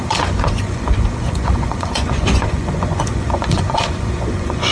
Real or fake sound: fake